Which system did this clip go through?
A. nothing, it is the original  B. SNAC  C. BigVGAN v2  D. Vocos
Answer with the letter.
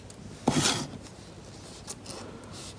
A